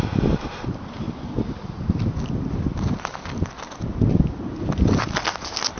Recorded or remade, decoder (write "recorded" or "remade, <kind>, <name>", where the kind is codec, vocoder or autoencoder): recorded